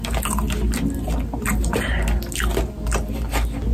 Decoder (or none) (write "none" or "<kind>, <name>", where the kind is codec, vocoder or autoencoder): none